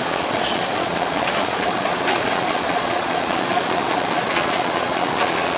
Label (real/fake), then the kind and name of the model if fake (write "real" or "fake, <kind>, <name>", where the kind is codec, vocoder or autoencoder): fake, vocoder, Vocos